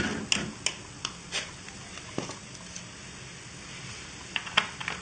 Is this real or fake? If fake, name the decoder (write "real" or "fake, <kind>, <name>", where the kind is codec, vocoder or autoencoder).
real